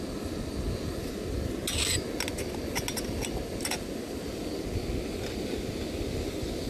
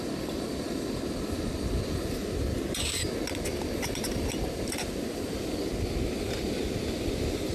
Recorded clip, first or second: first